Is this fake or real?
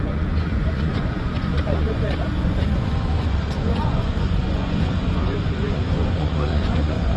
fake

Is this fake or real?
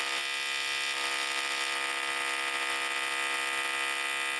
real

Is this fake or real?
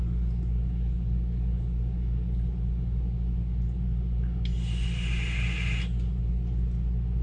real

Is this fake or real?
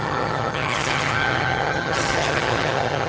fake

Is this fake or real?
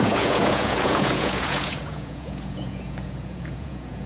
fake